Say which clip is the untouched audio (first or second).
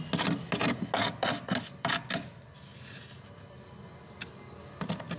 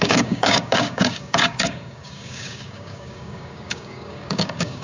first